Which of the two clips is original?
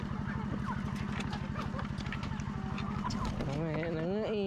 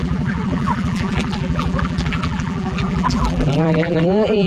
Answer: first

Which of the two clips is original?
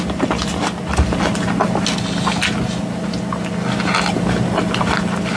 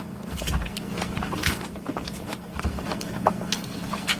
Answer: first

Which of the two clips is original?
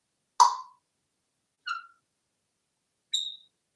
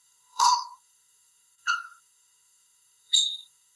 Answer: first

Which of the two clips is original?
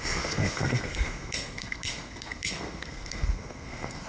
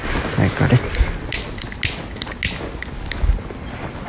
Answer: second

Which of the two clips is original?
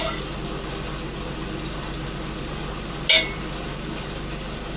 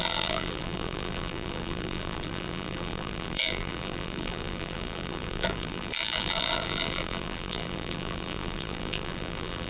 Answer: first